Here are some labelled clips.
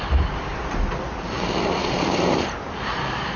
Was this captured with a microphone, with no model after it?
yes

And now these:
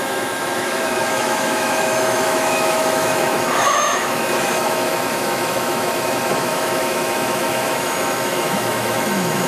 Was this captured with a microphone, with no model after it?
no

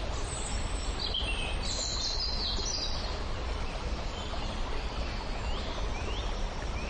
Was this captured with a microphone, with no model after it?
no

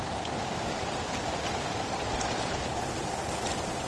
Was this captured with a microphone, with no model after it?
yes